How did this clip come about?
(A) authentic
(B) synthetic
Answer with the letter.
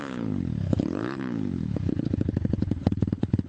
B